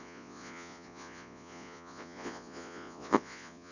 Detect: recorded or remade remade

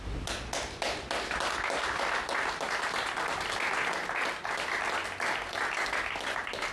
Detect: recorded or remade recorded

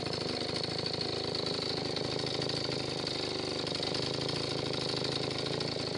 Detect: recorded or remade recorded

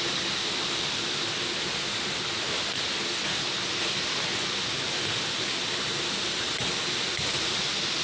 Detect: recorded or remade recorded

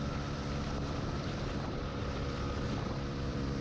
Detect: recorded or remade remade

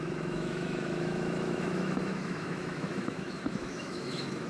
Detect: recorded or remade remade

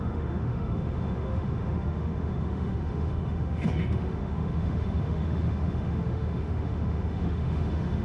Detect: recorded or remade remade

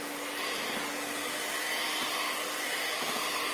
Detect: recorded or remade recorded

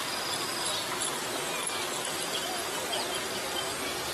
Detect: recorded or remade recorded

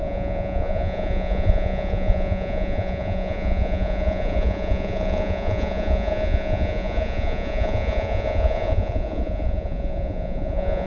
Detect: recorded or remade remade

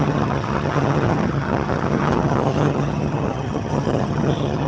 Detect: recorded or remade remade